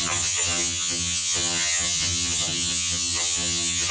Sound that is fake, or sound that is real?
fake